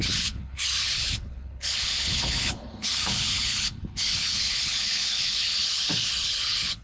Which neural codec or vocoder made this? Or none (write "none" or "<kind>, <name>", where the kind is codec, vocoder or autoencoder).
codec, HILCodec